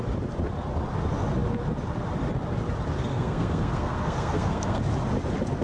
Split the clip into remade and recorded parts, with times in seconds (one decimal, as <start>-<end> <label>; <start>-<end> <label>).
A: 0.0-3.1 recorded; 3.1-4.8 remade; 4.8-5.6 recorded